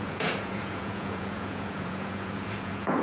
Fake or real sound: fake